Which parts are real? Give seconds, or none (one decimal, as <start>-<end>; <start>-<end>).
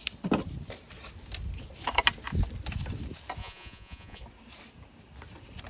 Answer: 0.0-3.4; 4.2-5.7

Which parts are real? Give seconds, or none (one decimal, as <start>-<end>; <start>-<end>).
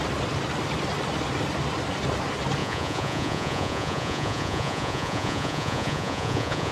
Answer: 0.0-2.6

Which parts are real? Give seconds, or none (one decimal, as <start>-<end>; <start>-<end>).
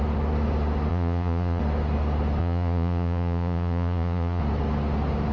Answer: 0.0-0.9; 1.6-2.4; 4.4-5.3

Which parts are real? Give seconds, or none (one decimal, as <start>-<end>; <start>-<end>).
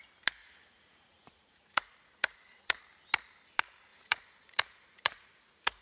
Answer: 0.0-0.4; 2.8-3.9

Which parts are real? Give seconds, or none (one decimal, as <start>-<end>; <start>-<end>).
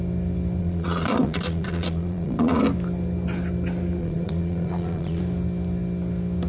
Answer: 0.0-0.6; 2.6-4.0; 5.2-6.5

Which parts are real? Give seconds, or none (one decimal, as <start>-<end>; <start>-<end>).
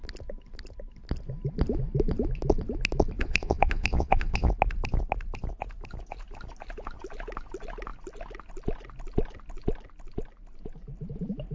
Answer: 0.0-3.2; 4.5-11.5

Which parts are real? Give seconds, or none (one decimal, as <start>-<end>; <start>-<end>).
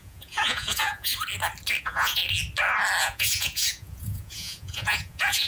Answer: 1.1-1.8; 2.2-3.0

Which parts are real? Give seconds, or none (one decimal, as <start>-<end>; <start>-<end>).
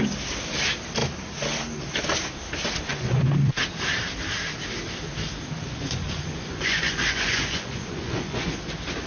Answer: 0.0-2.9; 3.5-5.6; 8.6-9.1